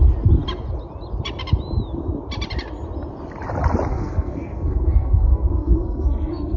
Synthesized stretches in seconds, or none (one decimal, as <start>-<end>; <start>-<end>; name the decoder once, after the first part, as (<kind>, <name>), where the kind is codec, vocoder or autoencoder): 3.9-6.6 (codec, SNAC)